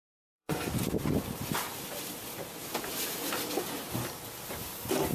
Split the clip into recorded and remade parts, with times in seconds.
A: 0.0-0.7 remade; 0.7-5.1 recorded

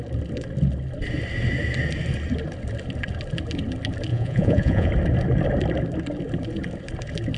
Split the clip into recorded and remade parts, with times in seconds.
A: 0.0-4.1 recorded; 4.1-4.9 remade; 4.9-7.4 recorded

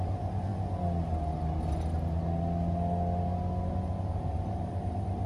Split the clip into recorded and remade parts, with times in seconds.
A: 0.0-0.5 remade; 0.5-3.7 recorded; 3.7-5.3 remade

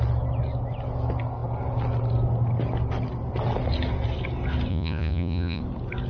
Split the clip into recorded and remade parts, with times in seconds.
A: 0.0-4.7 recorded; 4.7-5.6 remade; 5.6-6.1 recorded